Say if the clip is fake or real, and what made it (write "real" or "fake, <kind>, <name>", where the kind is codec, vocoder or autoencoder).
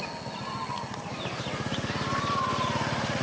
real